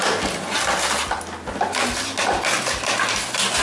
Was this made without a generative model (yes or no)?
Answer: yes